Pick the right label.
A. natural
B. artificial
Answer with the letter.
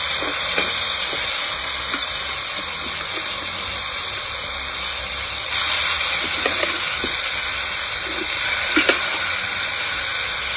A